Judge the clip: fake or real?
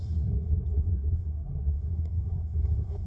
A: fake